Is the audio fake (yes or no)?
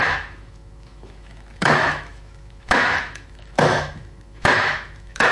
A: yes